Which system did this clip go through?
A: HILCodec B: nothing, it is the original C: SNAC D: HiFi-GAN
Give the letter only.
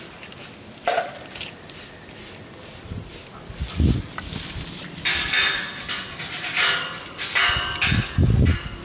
B